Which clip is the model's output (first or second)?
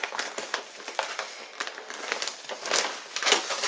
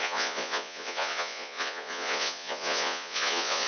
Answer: second